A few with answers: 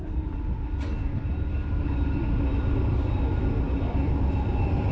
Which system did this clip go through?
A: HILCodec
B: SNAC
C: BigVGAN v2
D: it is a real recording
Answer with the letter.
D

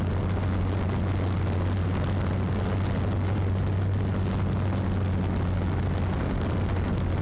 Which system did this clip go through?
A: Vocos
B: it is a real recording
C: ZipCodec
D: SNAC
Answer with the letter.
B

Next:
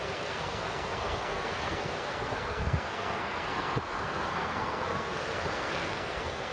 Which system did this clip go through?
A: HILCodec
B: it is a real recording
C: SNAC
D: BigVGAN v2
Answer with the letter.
C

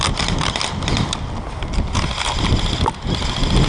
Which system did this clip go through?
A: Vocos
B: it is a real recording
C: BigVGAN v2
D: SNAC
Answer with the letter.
B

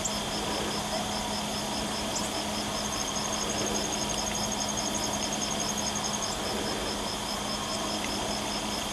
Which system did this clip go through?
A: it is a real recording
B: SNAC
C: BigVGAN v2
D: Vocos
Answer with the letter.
A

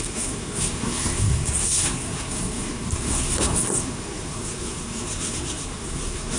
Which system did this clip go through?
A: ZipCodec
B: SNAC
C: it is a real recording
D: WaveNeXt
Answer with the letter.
B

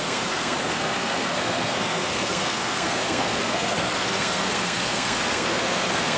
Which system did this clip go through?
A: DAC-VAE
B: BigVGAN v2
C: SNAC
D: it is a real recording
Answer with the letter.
C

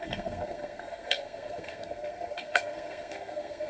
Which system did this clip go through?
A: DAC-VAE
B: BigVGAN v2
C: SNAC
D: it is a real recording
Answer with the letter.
C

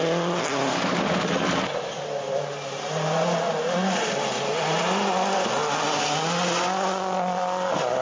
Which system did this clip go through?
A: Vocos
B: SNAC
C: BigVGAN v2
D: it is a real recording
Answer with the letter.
D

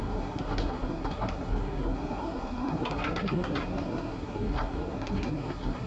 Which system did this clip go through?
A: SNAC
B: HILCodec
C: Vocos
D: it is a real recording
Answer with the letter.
A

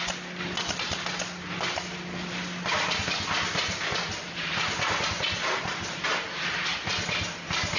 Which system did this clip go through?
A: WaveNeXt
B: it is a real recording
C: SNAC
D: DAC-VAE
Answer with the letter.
B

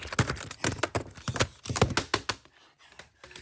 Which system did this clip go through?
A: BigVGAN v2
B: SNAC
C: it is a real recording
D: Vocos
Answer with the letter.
C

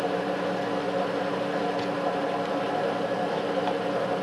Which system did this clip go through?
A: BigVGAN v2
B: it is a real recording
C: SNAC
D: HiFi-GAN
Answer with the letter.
B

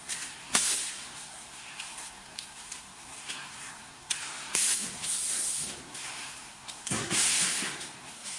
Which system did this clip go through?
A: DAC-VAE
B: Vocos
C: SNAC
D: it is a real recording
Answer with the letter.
C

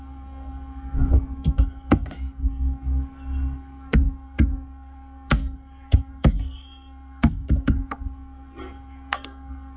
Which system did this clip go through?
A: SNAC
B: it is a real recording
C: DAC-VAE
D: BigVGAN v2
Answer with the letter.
A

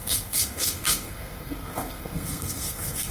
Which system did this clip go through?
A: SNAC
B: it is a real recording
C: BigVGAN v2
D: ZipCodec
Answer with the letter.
A